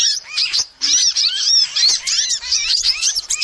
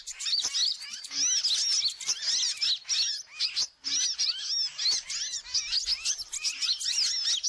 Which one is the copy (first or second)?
first